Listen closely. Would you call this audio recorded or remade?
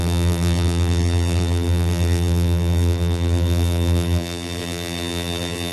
remade